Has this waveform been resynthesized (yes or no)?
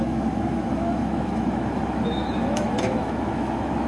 yes